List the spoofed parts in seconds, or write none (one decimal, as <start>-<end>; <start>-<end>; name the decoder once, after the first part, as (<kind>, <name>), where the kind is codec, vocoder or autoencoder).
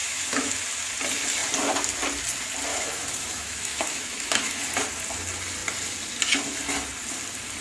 0.0-0.5 (autoencoder, DAC-VAE); 2.7-4.6